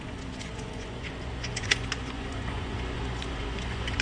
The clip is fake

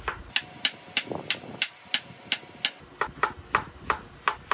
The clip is real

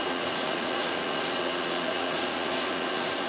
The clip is fake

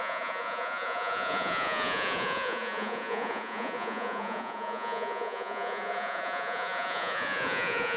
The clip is fake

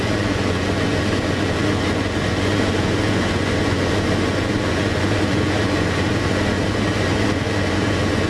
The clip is fake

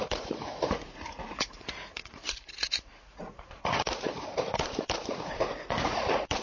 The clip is fake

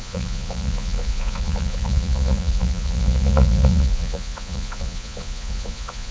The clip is fake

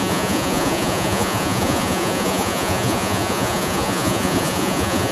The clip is fake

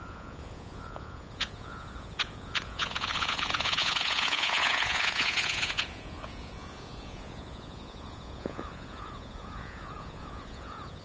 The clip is fake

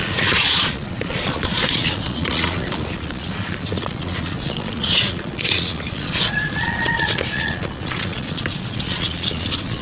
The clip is fake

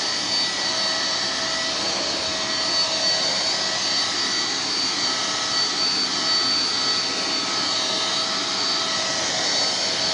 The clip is real